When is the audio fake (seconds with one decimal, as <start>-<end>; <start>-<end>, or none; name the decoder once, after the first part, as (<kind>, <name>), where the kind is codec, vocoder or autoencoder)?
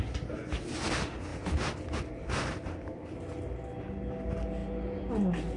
none